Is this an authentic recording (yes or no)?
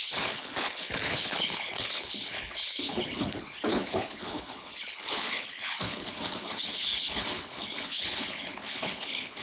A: no